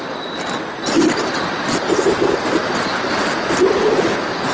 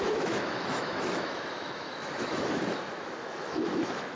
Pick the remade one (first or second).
second